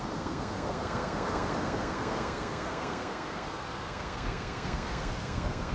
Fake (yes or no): yes